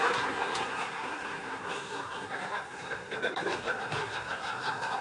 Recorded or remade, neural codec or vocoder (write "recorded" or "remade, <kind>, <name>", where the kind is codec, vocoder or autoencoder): remade, codec, SNAC